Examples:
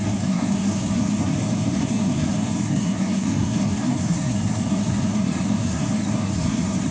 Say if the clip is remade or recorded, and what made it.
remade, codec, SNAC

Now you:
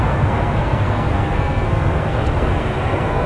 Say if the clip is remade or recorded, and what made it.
remade, codec, SNAC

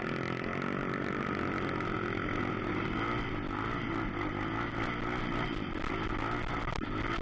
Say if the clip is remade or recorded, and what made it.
recorded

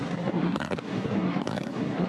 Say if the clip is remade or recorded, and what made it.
remade, codec, SNAC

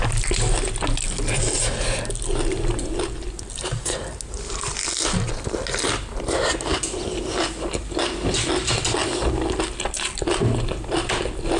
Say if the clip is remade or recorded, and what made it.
recorded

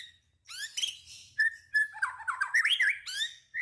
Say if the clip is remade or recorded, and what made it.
recorded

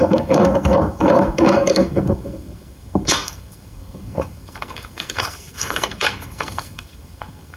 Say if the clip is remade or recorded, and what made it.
remade, codec, SNAC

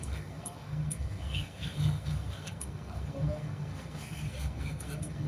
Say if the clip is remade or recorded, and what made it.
remade, codec, SNAC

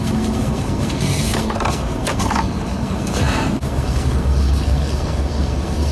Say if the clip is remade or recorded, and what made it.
remade, codec, SNAC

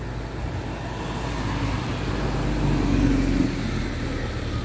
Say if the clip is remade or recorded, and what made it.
recorded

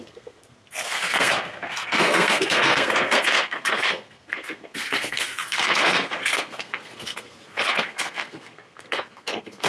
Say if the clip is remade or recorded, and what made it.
remade, codec, SNAC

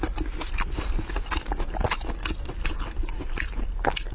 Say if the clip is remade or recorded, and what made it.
recorded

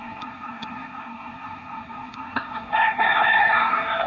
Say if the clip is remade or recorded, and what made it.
remade, codec, SNAC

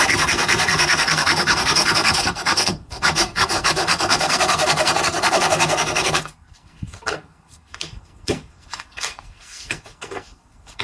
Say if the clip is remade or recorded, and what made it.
remade, codec, SNAC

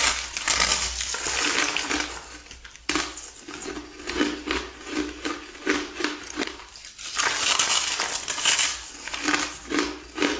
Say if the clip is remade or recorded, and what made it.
recorded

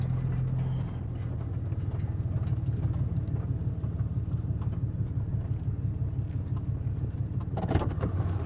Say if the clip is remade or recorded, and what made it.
recorded